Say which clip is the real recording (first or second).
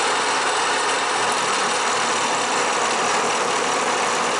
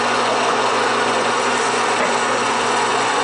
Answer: first